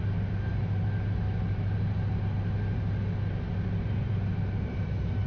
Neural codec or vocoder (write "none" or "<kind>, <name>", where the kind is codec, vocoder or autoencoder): none